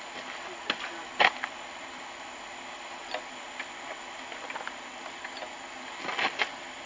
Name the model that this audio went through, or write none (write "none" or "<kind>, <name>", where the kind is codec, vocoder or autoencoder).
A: none